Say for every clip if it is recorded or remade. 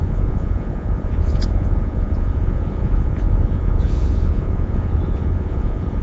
remade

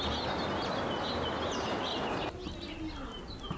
recorded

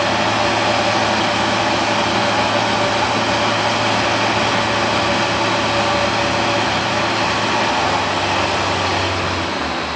recorded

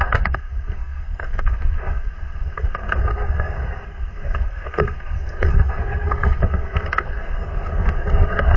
remade